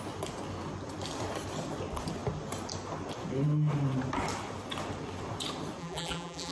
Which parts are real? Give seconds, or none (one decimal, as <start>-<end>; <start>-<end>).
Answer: 0.0-5.8